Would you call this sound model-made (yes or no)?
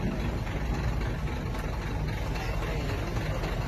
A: no